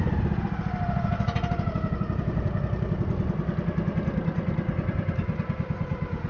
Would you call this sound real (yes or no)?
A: yes